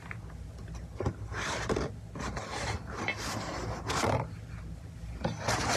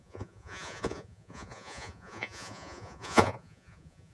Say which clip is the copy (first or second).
second